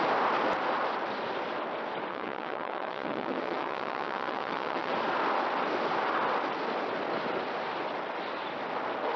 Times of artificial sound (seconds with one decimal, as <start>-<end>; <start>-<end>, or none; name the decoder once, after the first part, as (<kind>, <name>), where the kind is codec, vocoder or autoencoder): 2.1-4.9 (vocoder, WaveNeXt)